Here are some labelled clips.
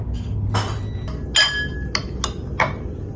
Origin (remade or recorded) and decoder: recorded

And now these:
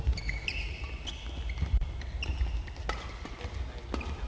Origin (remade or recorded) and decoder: recorded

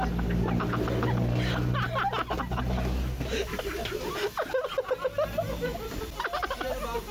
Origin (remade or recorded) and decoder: recorded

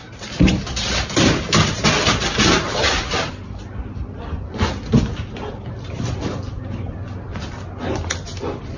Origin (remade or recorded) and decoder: recorded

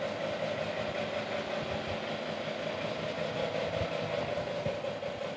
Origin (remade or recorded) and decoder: recorded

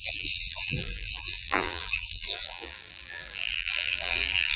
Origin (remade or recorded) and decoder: remade, vocoder, BigVGAN v2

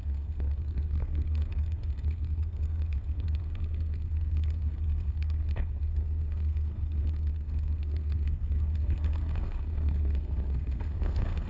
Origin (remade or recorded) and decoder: remade, codec, SNAC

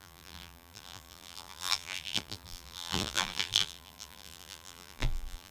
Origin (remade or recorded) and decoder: remade, vocoder, BigVGAN v2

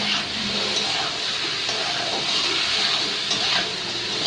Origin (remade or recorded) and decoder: recorded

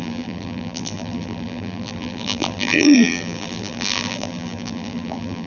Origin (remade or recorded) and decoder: remade, vocoder, BigVGAN v2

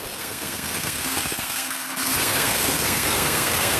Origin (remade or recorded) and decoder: remade, codec, SNAC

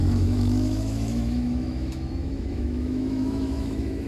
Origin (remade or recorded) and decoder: remade, autoencoder, DAC-VAE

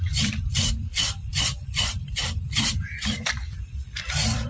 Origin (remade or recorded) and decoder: remade, vocoder, BigVGAN v2